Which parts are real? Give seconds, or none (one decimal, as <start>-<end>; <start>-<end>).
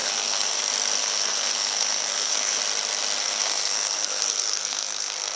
0.6-1.0; 2.6-3.2